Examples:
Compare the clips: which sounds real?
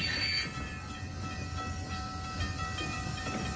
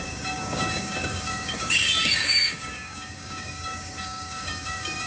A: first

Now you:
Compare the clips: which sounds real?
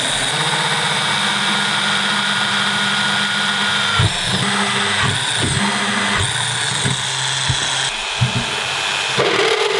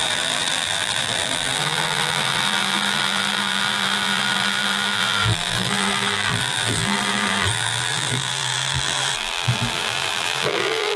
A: first